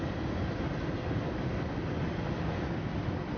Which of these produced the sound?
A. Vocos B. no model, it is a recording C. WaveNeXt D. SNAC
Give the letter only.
B